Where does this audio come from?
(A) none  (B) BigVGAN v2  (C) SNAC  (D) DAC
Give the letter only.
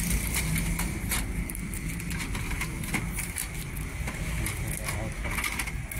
A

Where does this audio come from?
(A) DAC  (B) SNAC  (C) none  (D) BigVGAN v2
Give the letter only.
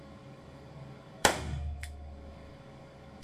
A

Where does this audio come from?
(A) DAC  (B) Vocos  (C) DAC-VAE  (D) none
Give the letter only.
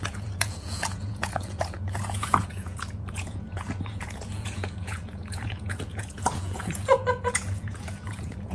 B